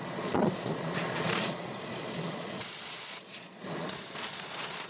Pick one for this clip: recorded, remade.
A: remade